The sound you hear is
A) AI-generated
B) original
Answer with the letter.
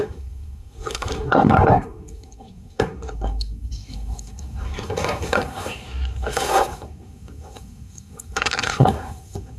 A